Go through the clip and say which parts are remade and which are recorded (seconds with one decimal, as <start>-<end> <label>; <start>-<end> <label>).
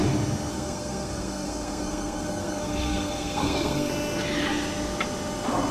0.0-0.5 recorded; 0.5-3.9 remade; 3.9-5.7 recorded